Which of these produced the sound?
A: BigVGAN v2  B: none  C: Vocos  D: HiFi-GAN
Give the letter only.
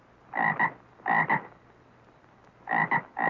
B